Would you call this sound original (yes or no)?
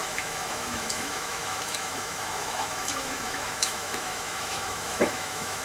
no